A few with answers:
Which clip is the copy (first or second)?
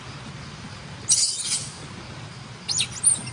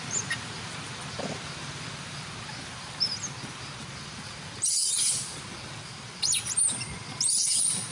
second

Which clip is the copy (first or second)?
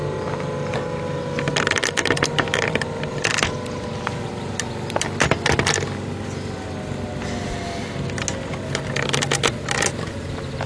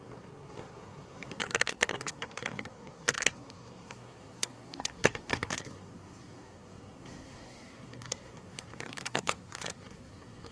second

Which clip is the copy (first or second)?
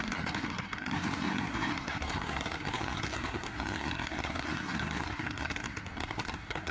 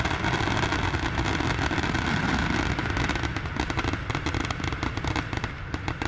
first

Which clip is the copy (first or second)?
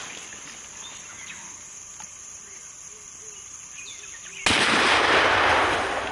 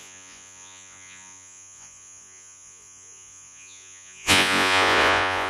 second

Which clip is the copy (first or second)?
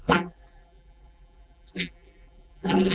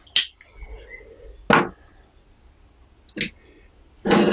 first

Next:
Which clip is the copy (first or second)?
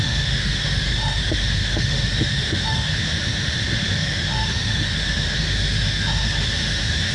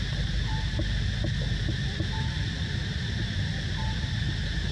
first